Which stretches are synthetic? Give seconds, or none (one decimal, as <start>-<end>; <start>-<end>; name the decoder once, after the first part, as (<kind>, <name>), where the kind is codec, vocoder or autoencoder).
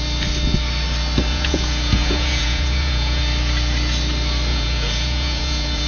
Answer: 1.3-3.2 (vocoder, Vocos); 4.5-5.9